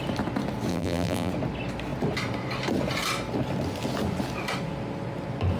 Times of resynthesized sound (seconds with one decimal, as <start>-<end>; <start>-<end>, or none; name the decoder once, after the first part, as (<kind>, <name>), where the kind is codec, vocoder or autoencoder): 0.7-1.3 (vocoder, BigVGAN v2)